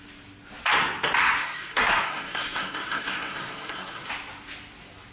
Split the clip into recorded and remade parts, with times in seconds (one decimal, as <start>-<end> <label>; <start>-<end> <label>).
0.0-1.4 recorded; 1.4-4.1 remade; 4.1-5.1 recorded